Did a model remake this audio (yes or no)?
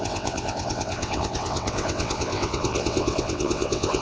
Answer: yes